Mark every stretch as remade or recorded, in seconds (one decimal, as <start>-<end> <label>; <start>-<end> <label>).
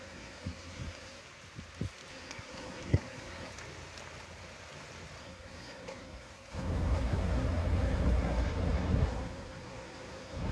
0.0-1.2 remade; 1.2-2.1 recorded; 2.1-3.5 remade; 3.5-5.2 recorded; 5.2-10.5 remade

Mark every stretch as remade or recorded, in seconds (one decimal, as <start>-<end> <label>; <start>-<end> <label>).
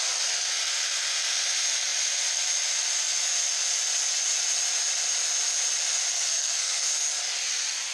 0.0-6.1 recorded; 6.1-6.9 remade; 6.9-7.9 recorded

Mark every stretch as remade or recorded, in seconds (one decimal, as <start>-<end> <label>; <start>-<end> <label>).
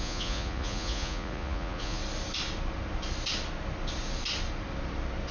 0.0-2.0 remade; 2.0-5.3 recorded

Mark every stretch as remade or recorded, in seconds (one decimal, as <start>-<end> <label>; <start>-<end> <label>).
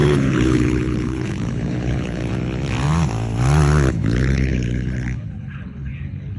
0.0-2.2 remade; 2.2-3.9 recorded; 3.9-6.4 remade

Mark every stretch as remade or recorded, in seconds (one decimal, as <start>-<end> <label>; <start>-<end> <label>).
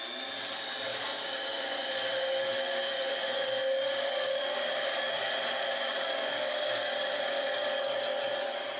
0.0-0.9 recorded; 0.9-5.3 remade; 5.3-5.8 recorded; 5.8-7.7 remade; 7.7-8.8 recorded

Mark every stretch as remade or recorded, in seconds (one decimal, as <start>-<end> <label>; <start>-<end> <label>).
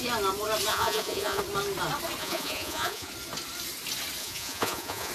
0.0-0.7 recorded; 0.7-1.4 remade; 1.4-2.2 recorded; 2.2-3.1 remade; 3.1-4.2 recorded; 4.2-5.1 remade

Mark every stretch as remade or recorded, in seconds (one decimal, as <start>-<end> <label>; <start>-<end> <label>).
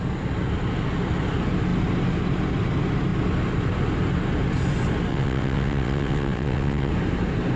0.0-5.1 recorded; 5.1-6.9 remade; 6.9-7.6 recorded